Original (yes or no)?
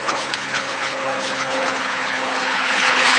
no